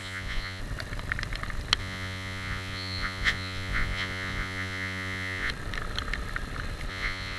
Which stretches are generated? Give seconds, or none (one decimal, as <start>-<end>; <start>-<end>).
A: 0.0-0.6; 1.8-5.5; 6.9-7.4